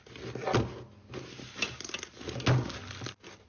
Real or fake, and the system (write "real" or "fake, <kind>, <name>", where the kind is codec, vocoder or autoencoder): real